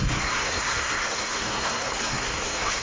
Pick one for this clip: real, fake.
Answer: fake